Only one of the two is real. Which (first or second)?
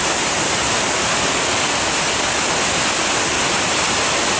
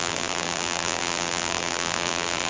first